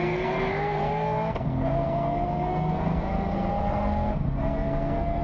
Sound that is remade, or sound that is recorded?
remade